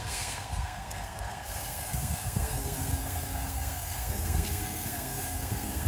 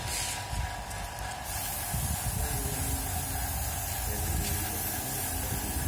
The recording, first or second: second